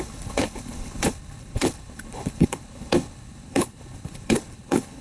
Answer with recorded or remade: remade